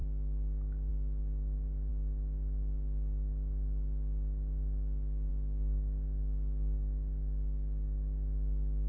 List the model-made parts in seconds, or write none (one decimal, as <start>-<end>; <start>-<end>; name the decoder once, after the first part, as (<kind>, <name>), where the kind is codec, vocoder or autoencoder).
none